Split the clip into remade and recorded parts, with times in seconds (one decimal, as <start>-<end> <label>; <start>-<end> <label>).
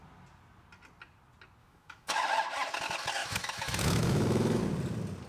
0.0-1.6 recorded; 1.6-2.2 remade; 2.2-3.2 recorded; 3.2-4.6 remade; 4.6-5.3 recorded